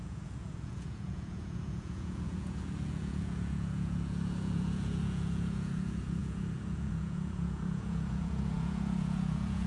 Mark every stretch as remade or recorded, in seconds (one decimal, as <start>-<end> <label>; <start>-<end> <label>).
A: 0.0-9.7 remade